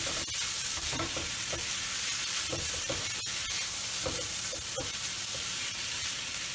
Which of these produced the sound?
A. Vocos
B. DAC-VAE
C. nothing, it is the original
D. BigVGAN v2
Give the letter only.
C